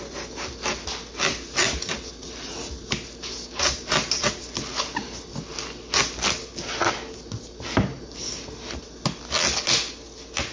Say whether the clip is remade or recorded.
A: recorded